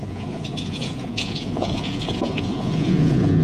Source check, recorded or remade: remade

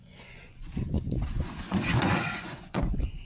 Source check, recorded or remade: remade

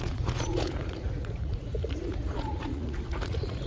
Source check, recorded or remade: remade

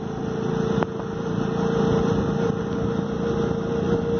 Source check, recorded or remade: recorded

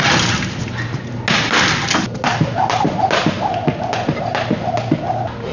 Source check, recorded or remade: recorded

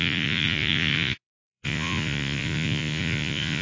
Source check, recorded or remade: remade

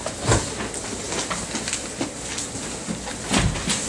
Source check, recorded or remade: recorded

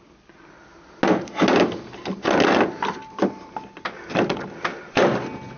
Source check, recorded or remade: recorded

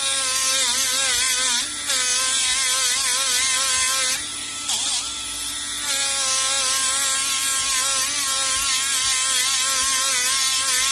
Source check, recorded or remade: recorded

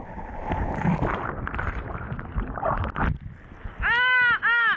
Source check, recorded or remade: recorded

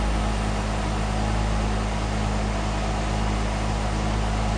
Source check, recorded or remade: recorded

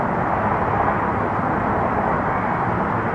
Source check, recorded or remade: recorded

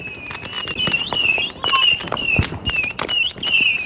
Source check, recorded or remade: recorded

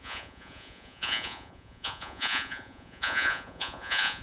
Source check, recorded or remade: remade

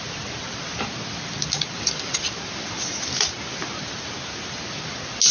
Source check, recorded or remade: recorded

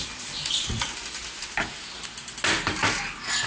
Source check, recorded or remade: recorded